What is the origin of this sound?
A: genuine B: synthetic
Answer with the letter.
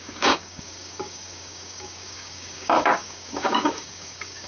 B